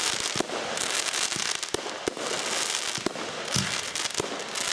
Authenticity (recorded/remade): recorded